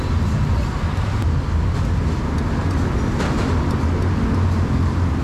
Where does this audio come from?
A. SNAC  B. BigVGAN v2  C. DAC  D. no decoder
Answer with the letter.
D